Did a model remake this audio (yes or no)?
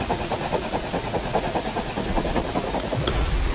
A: yes